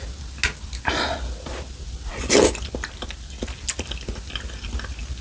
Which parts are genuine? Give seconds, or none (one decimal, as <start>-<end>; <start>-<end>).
0.0-5.2